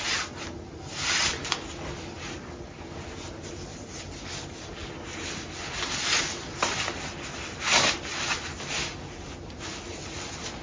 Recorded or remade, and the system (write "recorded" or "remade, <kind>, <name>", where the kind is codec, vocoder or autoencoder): recorded